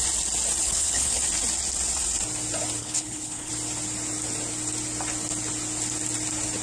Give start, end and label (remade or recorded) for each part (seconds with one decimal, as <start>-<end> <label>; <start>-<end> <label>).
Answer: 0.0-0.6 recorded; 0.6-1.2 remade; 1.2-2.8 recorded; 2.8-3.5 remade; 3.5-6.6 recorded